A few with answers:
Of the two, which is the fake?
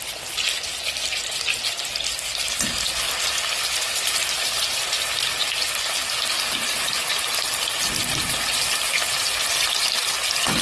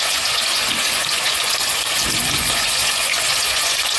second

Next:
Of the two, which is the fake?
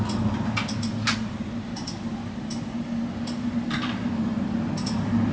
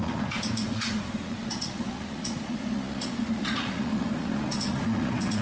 second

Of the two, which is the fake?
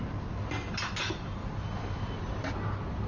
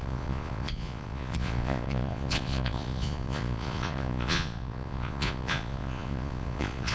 second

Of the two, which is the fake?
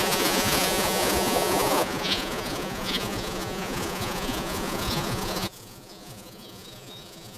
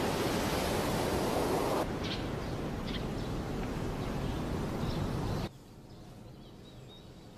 first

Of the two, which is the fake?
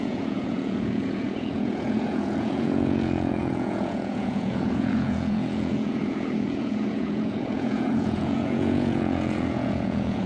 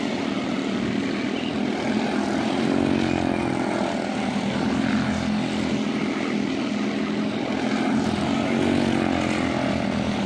first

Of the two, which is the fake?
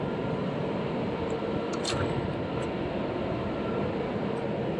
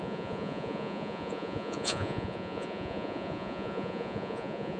second